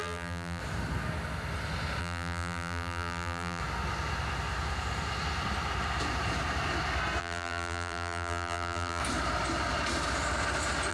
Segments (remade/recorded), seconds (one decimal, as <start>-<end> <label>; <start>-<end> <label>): 0.0-0.6 remade; 0.6-2.0 recorded; 2.0-3.6 remade; 3.6-7.2 recorded; 7.2-9.0 remade; 9.0-10.9 recorded